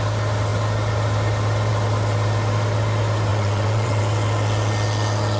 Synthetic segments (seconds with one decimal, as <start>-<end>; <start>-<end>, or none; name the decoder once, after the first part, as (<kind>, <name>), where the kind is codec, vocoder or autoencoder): 3.3-4.0 (vocoder, WaveNeXt)